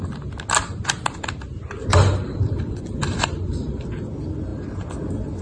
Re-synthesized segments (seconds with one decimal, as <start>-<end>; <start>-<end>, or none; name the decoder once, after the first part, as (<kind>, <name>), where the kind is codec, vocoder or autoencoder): 1.9-3.9 (vocoder, BigVGAN v2)